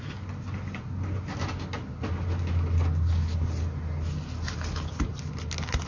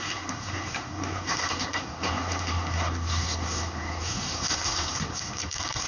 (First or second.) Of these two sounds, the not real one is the second